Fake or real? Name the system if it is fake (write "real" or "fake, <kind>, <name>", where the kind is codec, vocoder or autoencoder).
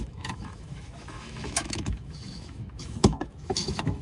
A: fake, autoencoder, DAC-VAE